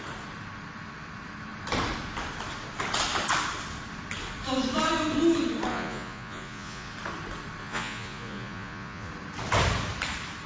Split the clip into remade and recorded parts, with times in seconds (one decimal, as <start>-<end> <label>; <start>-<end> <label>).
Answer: 0.0-5.7 recorded; 5.7-6.9 remade; 6.9-7.6 recorded; 7.6-9.1 remade; 9.1-10.5 recorded